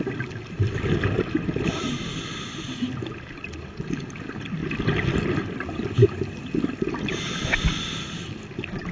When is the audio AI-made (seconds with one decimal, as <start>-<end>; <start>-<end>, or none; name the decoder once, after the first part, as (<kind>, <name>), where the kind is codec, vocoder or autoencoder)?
none